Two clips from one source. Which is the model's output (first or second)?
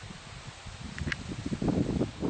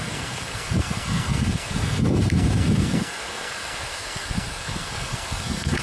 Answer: second